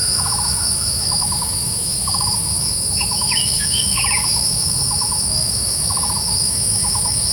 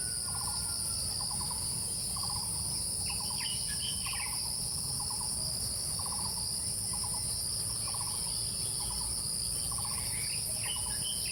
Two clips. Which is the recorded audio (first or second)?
second